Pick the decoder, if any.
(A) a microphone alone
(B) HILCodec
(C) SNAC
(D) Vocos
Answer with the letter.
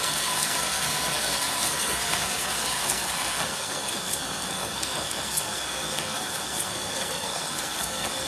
C